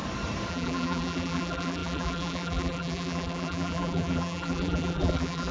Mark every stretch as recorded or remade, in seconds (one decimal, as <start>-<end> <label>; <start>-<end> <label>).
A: 0.0-0.5 recorded; 0.5-5.5 remade